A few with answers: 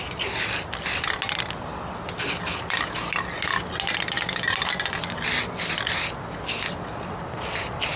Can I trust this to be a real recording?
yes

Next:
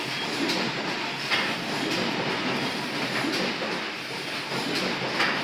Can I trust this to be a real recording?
yes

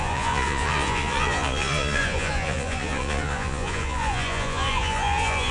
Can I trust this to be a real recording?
no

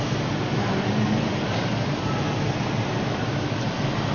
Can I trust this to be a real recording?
yes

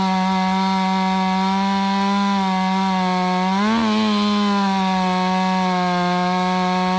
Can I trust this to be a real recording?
yes